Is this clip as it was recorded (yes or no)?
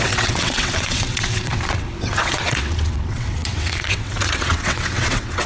no